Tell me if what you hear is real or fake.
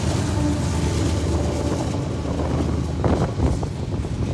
real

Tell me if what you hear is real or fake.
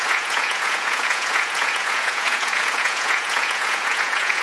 fake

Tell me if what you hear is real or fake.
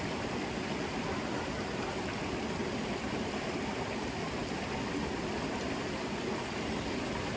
real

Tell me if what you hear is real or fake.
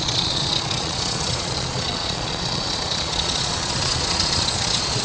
fake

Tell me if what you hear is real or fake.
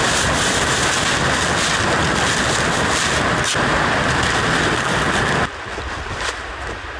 real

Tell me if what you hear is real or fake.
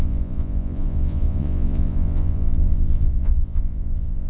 fake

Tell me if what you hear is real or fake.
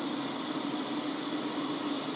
real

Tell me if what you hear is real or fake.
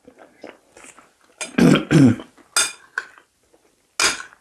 real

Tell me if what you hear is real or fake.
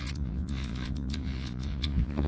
fake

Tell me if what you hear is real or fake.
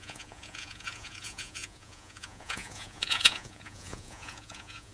fake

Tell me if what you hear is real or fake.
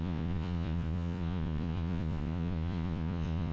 fake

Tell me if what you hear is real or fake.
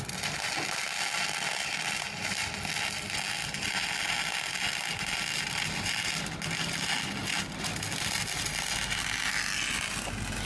real